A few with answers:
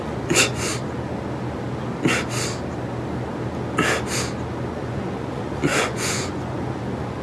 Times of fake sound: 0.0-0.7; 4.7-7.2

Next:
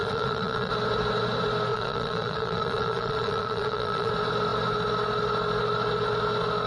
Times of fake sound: 0.0-0.7; 1.7-4.1

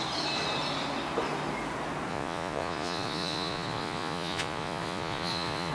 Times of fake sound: 2.1-5.7